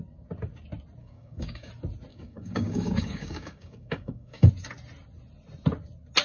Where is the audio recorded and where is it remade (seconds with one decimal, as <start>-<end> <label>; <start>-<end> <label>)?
0.0-1.0 recorded; 1.0-1.7 remade; 1.7-2.1 recorded; 2.1-4.5 remade; 4.5-6.2 recorded